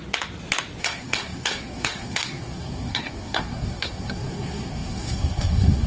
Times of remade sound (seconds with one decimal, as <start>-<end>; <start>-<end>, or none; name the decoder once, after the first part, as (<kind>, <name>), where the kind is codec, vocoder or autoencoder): 0.8-5.9 (codec, SNAC)